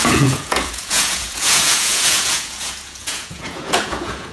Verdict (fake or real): fake